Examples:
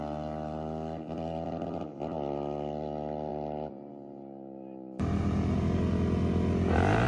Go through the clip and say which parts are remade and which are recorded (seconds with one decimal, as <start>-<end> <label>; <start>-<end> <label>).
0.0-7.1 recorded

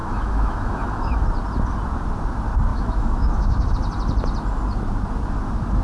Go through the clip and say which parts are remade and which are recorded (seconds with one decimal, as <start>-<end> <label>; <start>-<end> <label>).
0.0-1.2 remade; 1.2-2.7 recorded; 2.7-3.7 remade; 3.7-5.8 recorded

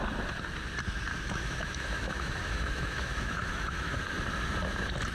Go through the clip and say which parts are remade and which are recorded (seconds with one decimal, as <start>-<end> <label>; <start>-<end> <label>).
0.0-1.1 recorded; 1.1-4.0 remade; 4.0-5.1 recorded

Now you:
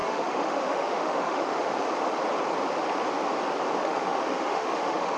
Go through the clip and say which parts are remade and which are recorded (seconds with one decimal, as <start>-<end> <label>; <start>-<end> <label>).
0.0-1.7 remade; 1.7-3.8 recorded; 3.8-5.2 remade

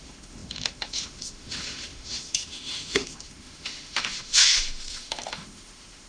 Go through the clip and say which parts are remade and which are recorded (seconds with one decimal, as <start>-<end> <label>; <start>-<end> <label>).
0.0-6.1 remade

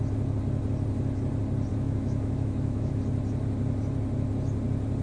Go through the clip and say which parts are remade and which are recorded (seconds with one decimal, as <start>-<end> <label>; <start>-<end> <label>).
0.0-1.7 recorded; 1.7-2.9 remade; 2.9-5.0 recorded

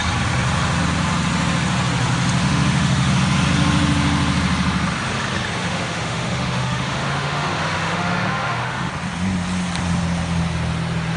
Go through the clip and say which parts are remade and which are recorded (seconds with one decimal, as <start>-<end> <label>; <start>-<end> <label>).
0.0-2.4 recorded; 2.4-3.1 remade; 3.1-5.6 recorded; 5.6-8.9 remade; 8.9-11.2 recorded